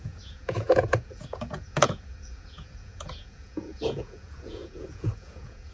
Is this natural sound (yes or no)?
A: no